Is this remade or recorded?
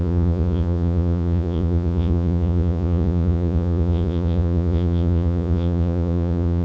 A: remade